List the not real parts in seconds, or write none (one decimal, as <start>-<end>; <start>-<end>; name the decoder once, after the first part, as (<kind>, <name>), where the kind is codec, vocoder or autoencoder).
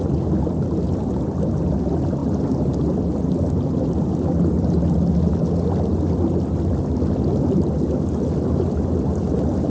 none